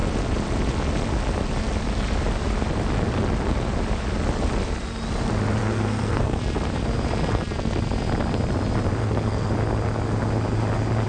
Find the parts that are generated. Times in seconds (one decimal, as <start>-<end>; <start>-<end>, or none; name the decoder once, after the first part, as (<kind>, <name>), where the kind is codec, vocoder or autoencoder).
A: 5.6-6.4 (codec, SNAC); 9.0-9.5